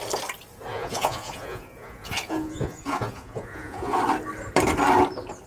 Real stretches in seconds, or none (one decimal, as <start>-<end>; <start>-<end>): 0.0-0.7; 4.0-5.5